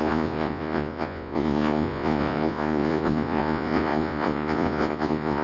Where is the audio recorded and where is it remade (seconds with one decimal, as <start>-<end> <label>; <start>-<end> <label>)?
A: 0.0-5.4 remade